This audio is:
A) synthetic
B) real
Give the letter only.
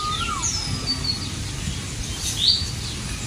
B